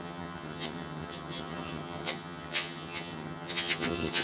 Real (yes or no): no